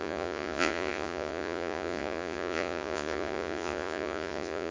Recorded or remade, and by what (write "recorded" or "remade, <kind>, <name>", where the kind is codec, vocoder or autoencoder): remade, vocoder, Vocos